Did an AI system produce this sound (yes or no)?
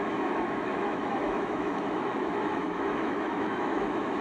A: yes